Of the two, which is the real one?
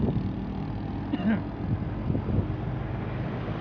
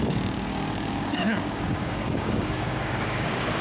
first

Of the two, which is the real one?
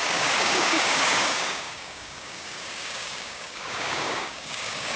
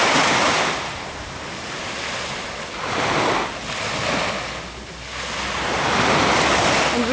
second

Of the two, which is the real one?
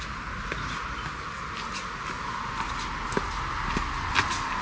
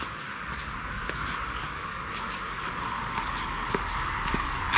first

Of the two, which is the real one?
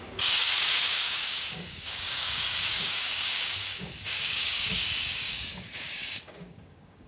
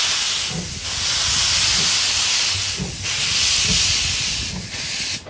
second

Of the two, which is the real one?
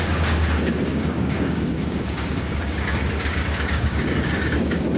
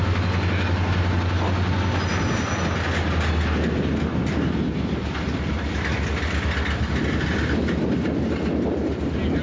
second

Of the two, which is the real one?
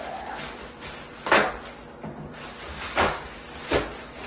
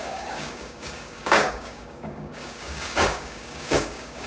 first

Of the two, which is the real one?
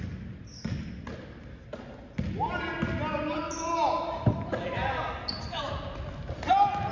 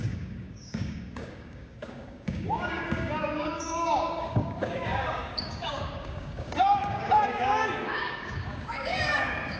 first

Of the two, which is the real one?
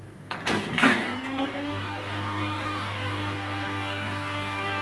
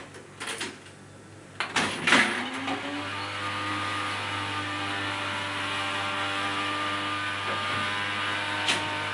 second